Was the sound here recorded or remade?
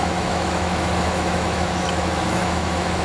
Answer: remade